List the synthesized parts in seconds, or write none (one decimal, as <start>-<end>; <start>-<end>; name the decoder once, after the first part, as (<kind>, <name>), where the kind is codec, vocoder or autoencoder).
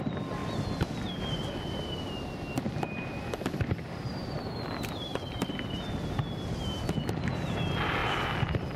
none